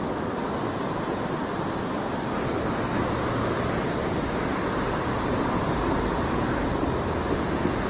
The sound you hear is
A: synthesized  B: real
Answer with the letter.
B